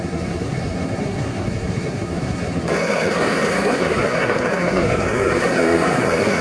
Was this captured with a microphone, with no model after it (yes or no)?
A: no